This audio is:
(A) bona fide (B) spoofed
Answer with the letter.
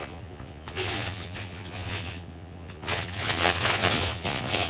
B